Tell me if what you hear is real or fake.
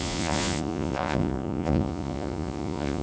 fake